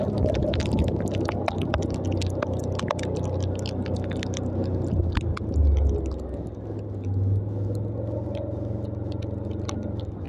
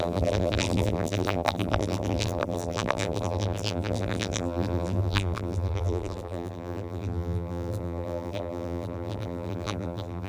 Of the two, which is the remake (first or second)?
second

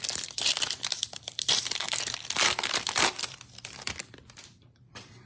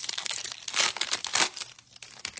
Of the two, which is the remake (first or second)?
first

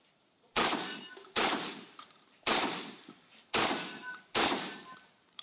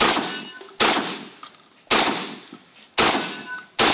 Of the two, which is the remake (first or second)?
first